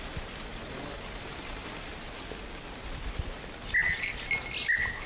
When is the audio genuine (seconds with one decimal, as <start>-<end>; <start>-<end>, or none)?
0.0-0.5; 1.9-5.1